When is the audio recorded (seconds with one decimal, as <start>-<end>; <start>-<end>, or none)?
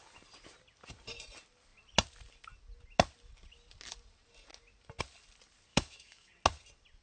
0.0-5.7; 6.3-7.0